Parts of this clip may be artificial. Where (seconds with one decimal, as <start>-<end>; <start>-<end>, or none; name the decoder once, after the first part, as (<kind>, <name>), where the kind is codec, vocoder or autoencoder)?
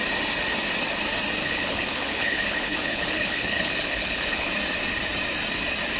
1.4-4.5 (codec, HILCodec)